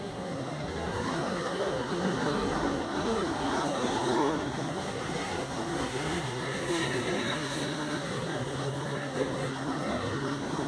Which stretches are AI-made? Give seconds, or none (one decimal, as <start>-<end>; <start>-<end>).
0.0-10.7